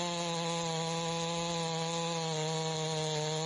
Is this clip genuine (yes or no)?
yes